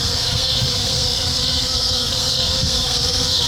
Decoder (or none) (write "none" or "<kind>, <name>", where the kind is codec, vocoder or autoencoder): codec, SNAC